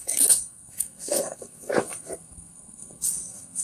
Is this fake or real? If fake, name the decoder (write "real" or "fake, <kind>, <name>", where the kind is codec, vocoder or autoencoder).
fake, codec, SNAC